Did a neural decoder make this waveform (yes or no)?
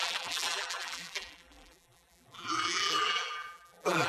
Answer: yes